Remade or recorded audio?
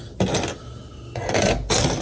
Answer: recorded